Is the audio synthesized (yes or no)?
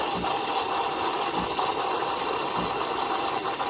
no